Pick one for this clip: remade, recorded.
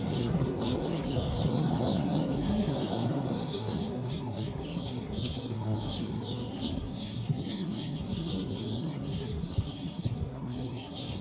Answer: remade